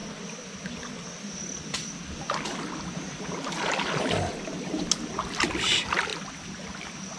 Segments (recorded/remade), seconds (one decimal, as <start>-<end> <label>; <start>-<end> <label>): 0.0-7.2 recorded